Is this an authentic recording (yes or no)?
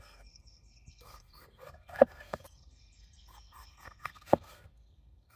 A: no